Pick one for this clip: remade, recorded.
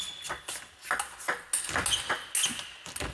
recorded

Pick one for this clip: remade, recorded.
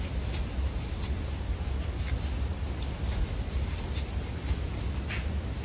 recorded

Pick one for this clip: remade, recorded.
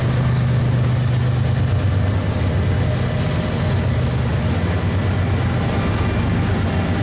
recorded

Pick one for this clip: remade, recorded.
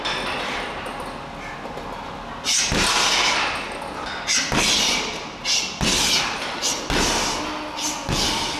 recorded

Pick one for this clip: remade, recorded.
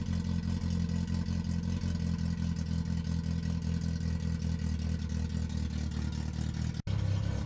recorded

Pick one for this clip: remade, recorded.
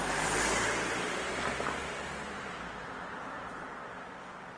recorded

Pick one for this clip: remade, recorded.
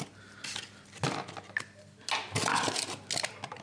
recorded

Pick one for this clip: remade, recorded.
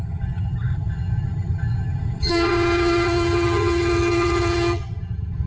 remade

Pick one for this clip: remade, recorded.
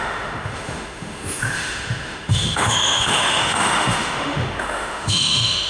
remade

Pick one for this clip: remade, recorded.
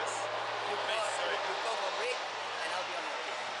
recorded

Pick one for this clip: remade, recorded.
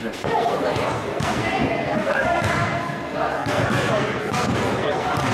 remade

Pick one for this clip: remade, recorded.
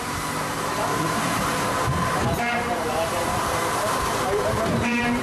remade